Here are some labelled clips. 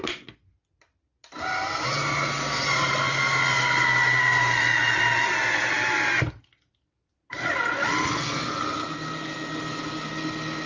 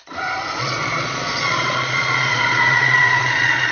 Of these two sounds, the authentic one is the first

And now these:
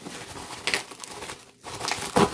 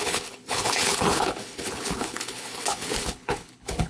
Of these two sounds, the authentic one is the first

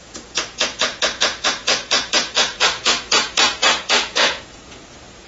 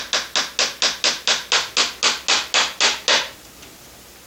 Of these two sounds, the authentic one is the second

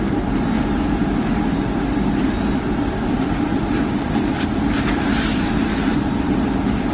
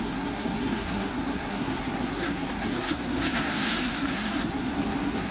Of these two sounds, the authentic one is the first